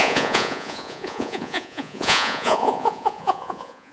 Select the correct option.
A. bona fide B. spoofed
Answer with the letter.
B